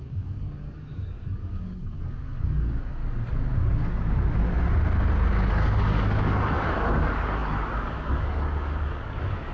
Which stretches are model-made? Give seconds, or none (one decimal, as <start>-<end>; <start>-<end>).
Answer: 0.0-3.0; 5.5-9.5